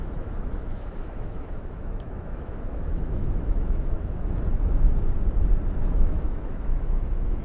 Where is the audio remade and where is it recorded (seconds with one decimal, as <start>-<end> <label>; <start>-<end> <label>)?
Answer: 0.0-4.4 remade; 4.4-5.8 recorded; 5.8-7.4 remade